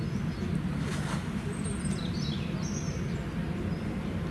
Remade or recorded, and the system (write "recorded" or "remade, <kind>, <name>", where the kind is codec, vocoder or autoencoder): recorded